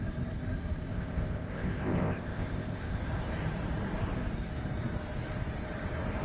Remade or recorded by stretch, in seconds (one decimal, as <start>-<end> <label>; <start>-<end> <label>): 0.0-0.9 recorded; 0.9-3.0 remade; 3.0-6.2 recorded